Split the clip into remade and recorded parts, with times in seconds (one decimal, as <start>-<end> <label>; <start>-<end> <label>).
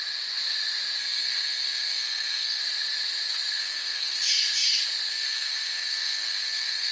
0.0-1.0 recorded; 1.0-2.6 remade; 2.6-3.6 recorded; 3.6-4.2 remade; 4.2-5.1 recorded; 5.1-6.9 remade